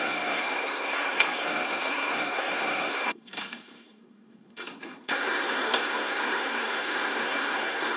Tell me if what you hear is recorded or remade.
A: remade